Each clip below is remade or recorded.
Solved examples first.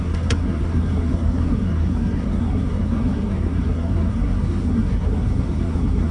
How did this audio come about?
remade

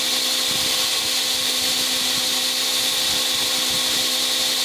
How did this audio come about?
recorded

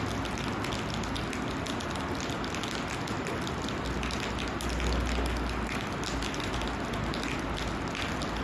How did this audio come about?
recorded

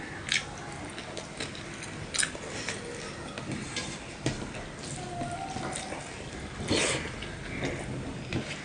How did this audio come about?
recorded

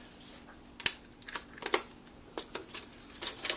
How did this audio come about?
recorded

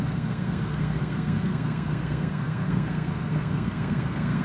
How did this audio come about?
remade